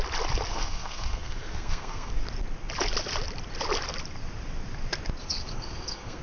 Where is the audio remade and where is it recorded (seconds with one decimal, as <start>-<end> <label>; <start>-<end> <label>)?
0.0-0.5 recorded; 0.5-2.1 remade; 2.1-5.2 recorded; 5.2-6.2 remade